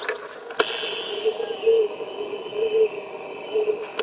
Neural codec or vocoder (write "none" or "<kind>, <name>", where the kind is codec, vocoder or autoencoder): none